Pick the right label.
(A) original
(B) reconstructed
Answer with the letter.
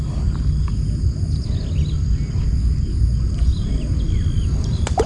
A